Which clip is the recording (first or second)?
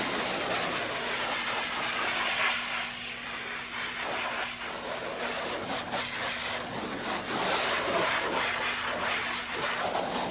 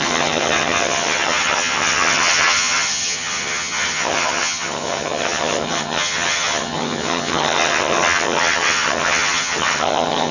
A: first